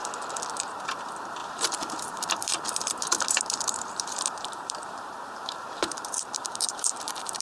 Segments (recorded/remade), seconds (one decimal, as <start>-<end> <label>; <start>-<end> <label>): 0.0-0.6 recorded; 0.6-7.4 remade